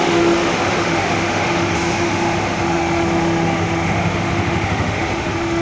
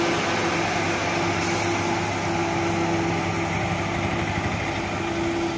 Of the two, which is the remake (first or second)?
first